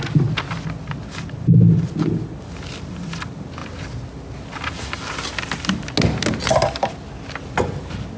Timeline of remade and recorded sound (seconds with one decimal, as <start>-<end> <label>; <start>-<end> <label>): 0.0-8.2 recorded